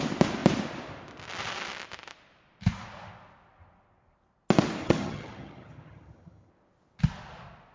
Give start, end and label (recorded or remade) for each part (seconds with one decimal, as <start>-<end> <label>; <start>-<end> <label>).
0.0-4.8 recorded; 4.8-6.5 remade; 6.5-7.7 recorded